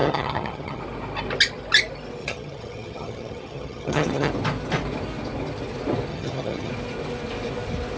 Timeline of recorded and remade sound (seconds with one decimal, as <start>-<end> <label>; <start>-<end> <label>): 0.0-0.8 remade; 0.8-2.2 recorded; 2.2-4.3 remade; 4.3-6.1 recorded; 6.1-6.7 remade; 6.7-8.0 recorded